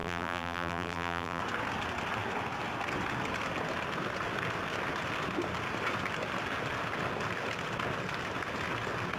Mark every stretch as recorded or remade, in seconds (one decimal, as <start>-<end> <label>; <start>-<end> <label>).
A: 0.0-1.4 remade; 1.4-9.2 recorded

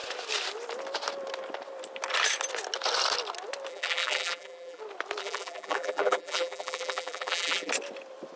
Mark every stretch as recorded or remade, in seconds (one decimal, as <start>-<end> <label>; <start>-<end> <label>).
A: 0.0-3.7 recorded; 3.7-4.8 remade; 4.8-5.2 recorded; 5.2-7.7 remade; 7.7-8.4 recorded

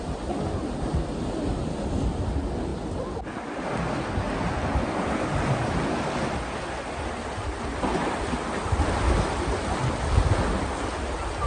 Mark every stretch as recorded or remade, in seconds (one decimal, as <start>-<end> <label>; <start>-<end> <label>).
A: 0.0-11.5 recorded

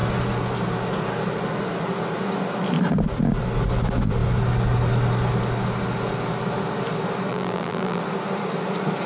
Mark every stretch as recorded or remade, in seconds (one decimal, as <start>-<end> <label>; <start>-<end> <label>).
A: 0.0-7.3 recorded; 7.3-8.0 remade; 8.0-9.1 recorded